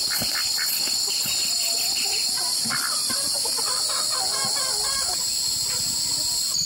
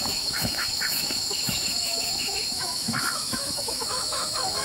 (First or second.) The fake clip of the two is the second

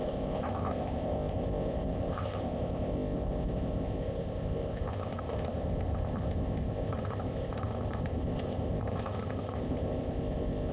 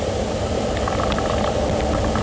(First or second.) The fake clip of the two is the first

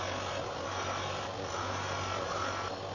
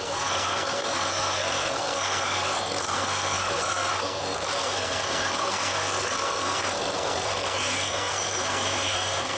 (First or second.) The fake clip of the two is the second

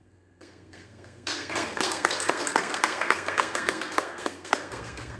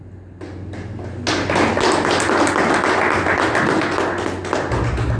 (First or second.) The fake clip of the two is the first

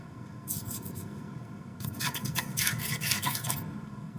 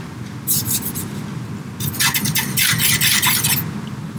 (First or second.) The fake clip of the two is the first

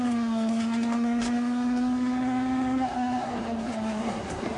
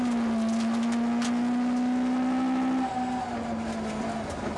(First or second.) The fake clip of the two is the first